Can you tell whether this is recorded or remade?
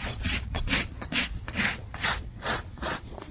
remade